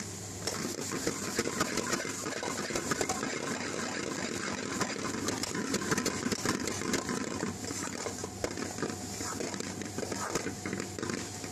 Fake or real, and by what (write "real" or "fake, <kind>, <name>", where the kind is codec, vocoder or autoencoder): real